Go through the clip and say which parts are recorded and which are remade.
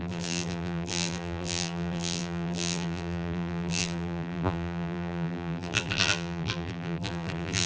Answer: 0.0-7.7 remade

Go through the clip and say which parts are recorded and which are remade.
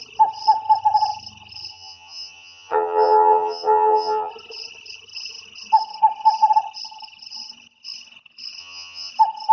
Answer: 0.0-1.7 recorded; 1.7-4.3 remade; 4.3-8.6 recorded; 8.6-9.1 remade; 9.1-9.5 recorded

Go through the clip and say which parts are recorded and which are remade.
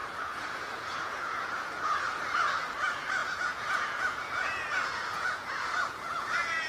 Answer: 0.0-1.8 remade; 1.8-3.2 recorded; 3.2-6.7 remade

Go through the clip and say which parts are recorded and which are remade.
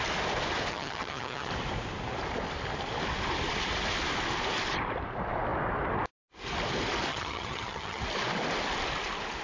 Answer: 0.0-0.7 recorded; 0.7-1.5 remade; 1.5-7.1 recorded; 7.1-8.0 remade; 8.0-9.4 recorded